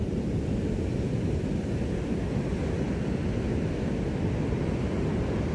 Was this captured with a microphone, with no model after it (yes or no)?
yes